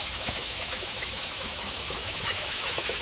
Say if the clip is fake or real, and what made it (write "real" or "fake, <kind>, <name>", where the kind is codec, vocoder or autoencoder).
fake, autoencoder, DAC-VAE